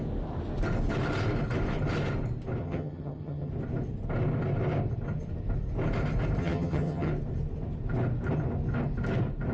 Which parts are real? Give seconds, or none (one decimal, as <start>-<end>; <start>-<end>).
0.0-2.6; 3.5-6.4; 7.1-9.5